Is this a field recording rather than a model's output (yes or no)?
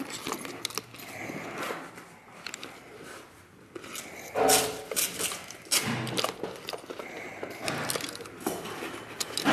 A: yes